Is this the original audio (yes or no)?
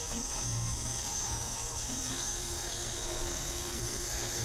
no